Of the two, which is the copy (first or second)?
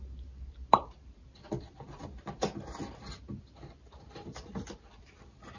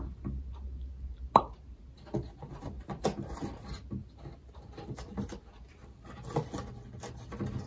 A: first